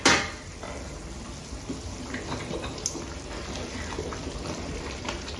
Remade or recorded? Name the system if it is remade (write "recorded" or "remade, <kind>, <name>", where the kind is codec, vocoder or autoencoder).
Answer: recorded